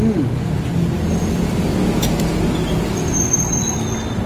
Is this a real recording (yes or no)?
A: yes